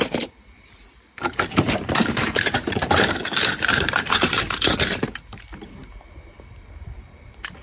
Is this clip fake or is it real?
fake